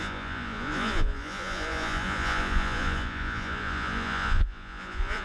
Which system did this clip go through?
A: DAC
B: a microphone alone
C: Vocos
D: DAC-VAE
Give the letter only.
C